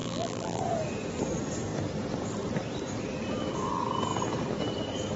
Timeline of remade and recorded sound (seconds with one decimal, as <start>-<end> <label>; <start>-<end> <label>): 0.0-0.6 remade; 0.6-5.2 recorded